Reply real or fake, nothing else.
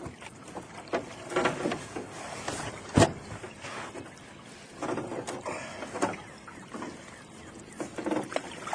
real